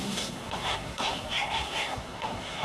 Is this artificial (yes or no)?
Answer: yes